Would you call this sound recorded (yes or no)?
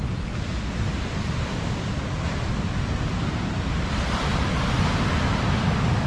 yes